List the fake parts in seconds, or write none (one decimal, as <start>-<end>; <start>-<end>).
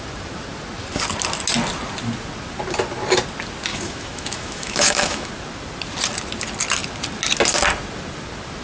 3.7-5.3